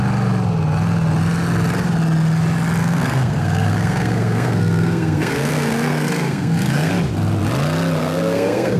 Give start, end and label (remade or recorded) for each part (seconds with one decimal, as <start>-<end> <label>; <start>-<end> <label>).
0.0-2.8 recorded; 2.8-6.9 remade; 6.9-8.0 recorded; 8.0-8.8 remade